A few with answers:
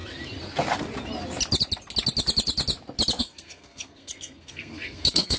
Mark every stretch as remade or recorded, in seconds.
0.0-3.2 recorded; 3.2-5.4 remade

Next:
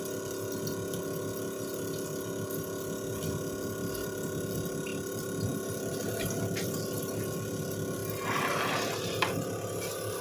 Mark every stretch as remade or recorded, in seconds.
0.0-8.0 remade; 8.0-9.3 recorded; 9.3-10.2 remade

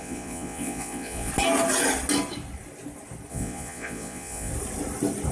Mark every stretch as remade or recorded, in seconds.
0.0-1.3 remade; 1.3-3.3 recorded; 3.3-4.5 remade; 4.5-5.3 recorded

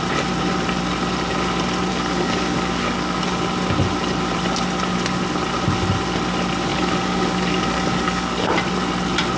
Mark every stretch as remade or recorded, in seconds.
0.0-1.9 recorded; 1.9-3.4 remade; 3.4-6.7 recorded; 6.7-8.5 remade; 8.5-9.4 recorded

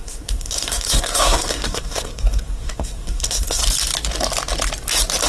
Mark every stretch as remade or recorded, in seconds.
0.0-3.6 remade; 3.6-5.3 recorded

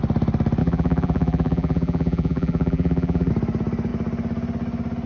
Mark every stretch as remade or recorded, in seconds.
0.0-0.6 recorded; 0.6-3.3 remade; 3.3-5.1 recorded

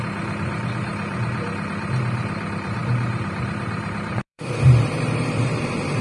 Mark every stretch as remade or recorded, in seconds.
0.0-6.0 remade

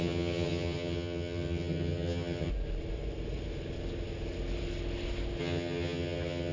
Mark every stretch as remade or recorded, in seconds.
0.0-2.5 remade; 2.5-5.4 recorded; 5.4-6.5 remade